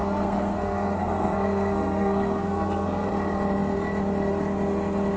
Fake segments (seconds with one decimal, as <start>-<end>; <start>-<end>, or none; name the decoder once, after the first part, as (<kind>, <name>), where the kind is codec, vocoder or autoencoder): 0.0-3.1 (codec, SNAC)